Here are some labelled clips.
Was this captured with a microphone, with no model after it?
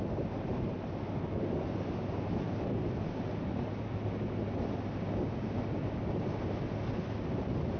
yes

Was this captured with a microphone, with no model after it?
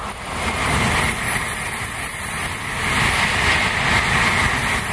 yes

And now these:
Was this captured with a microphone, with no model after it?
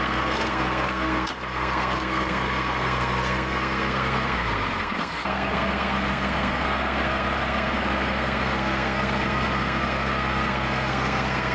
no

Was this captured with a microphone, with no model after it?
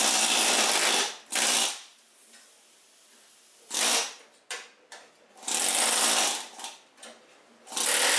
yes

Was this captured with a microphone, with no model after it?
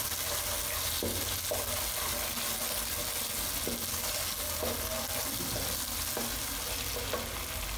yes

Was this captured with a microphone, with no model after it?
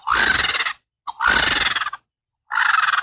yes